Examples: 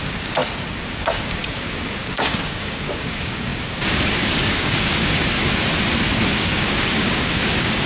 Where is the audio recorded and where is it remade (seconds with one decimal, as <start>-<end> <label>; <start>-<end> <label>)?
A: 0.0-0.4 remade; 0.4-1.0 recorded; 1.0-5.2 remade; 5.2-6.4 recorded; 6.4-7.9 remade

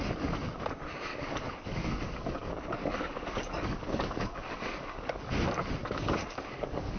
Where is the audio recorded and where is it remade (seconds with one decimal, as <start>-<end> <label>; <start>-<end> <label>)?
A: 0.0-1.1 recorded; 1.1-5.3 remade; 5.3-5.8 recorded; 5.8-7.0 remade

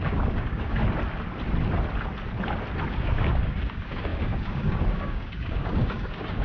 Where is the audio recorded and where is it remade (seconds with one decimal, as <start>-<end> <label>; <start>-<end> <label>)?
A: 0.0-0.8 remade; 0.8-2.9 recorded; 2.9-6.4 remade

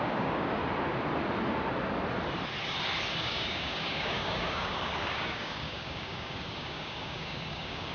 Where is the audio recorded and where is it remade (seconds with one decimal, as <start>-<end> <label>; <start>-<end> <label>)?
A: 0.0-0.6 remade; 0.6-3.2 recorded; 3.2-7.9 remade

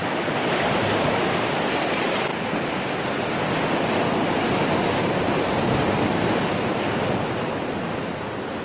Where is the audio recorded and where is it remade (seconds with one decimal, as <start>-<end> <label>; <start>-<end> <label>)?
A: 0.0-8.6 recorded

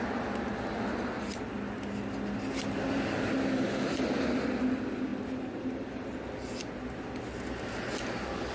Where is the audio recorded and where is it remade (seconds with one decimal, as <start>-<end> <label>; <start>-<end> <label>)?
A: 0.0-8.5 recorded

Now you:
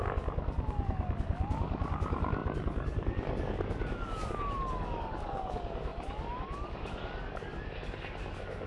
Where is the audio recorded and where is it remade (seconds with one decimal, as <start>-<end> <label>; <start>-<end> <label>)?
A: 0.0-8.7 remade